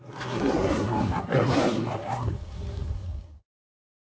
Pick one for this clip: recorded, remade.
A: remade